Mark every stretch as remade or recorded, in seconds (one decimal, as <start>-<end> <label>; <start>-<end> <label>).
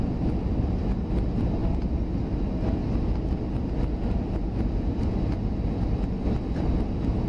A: 0.0-7.3 recorded